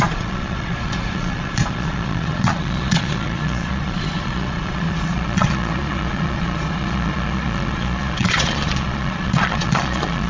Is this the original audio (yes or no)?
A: no